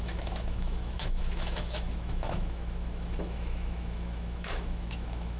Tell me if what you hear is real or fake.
fake